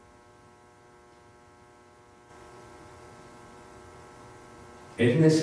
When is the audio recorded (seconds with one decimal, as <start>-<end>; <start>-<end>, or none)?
0.0-2.3; 5.0-5.4